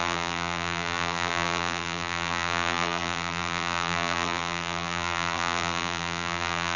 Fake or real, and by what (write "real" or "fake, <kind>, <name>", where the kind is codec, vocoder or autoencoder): fake, vocoder, BigVGAN v2